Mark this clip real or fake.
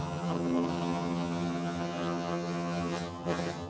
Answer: fake